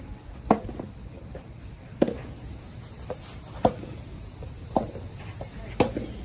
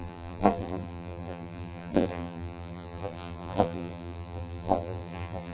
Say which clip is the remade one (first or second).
second